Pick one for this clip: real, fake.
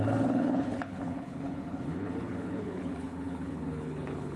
fake